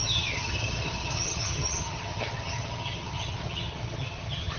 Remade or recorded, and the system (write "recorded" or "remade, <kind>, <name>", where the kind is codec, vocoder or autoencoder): remade, vocoder, HiFi-GAN